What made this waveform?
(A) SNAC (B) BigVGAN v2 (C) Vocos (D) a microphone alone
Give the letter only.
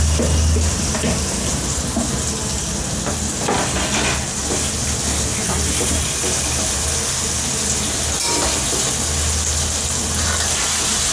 D